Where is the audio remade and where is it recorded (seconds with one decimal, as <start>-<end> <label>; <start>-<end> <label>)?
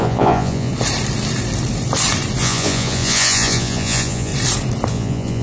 0.0-0.7 remade; 0.7-2.4 recorded; 2.4-4.3 remade; 4.3-4.9 recorded; 4.9-5.4 remade